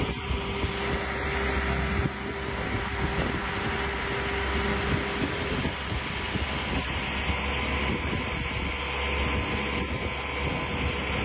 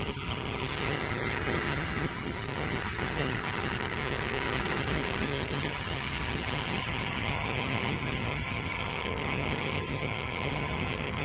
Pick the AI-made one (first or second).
second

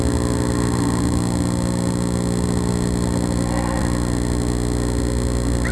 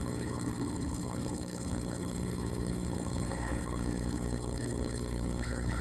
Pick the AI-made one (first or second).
second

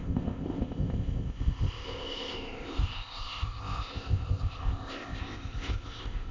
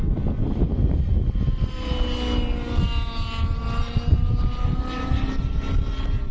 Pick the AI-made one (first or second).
first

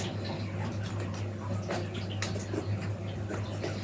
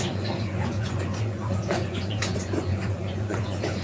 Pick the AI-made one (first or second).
second